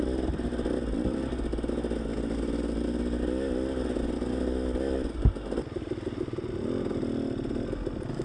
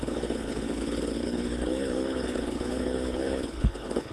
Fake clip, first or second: second